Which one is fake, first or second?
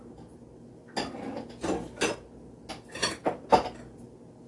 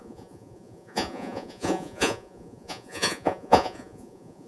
second